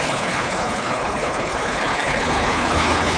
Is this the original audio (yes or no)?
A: no